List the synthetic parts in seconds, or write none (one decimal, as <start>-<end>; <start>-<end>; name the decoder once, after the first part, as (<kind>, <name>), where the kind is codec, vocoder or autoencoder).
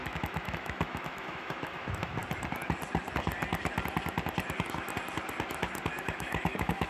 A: 0.0-2.2 (autoencoder, DAC-VAE); 6.0-6.9